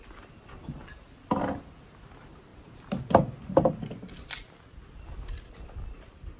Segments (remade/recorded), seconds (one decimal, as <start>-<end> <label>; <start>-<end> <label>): 0.0-6.4 recorded